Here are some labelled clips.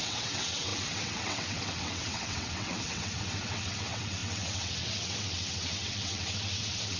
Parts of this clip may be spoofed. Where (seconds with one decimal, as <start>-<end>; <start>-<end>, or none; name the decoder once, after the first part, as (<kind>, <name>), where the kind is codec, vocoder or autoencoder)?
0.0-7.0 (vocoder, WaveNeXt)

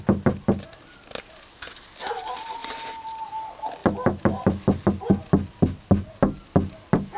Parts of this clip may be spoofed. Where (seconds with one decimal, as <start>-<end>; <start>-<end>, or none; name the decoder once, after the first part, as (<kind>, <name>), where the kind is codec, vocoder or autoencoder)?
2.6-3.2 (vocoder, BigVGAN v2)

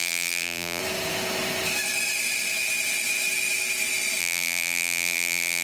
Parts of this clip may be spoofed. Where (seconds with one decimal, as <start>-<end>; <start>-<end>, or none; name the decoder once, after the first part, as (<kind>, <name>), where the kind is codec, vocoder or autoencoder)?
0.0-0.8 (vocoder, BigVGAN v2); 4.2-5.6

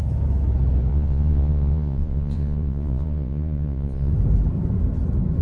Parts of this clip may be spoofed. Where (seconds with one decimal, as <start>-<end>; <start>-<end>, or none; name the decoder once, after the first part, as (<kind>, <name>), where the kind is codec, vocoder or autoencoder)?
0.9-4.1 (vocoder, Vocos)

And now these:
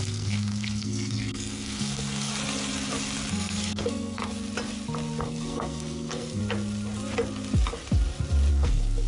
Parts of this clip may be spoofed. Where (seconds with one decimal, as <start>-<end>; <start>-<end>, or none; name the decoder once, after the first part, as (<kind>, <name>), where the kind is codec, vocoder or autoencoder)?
0.0-2.3 (codec, SNAC); 3.3-4.2; 5.2-6.4; 8.5-9.1